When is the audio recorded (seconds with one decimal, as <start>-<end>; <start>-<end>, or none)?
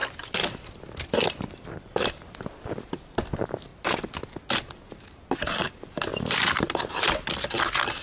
0.0-6.1; 7.1-8.0